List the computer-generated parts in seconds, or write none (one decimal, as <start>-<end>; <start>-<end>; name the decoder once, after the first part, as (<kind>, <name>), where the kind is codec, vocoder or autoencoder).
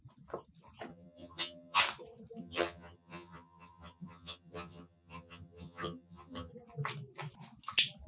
0.9-1.8 (vocoder, HiFi-GAN); 2.4-6.5